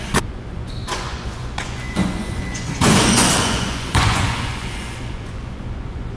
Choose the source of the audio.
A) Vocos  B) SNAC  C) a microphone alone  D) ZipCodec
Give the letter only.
A